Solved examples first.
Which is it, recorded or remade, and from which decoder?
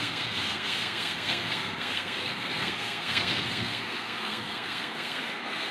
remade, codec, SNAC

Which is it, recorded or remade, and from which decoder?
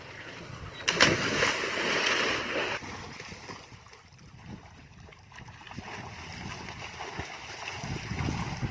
recorded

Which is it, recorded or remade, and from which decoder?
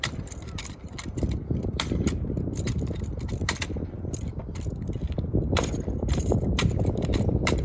remade, vocoder, BigVGAN v2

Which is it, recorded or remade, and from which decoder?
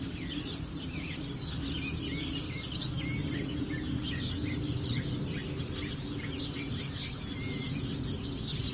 recorded